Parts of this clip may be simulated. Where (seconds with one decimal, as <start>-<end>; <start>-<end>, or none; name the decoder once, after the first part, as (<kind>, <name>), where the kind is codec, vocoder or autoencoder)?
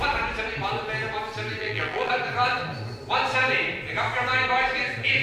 1.6-2.1 (vocoder, BigVGAN v2)